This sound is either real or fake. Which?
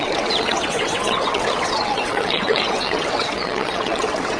fake